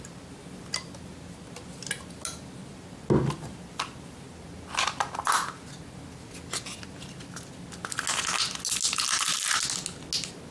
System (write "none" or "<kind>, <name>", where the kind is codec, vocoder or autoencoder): none